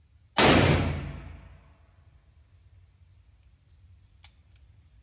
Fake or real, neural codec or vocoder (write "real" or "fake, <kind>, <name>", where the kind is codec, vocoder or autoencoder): real